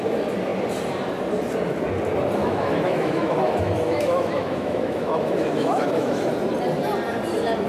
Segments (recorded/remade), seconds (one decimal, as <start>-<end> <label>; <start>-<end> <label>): 0.0-2.4 recorded; 2.4-6.3 remade; 6.3-7.7 recorded